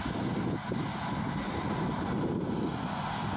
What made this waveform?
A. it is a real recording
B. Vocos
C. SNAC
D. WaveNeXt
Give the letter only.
A